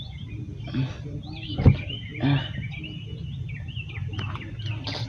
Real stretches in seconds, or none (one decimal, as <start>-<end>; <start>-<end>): 0.0-5.1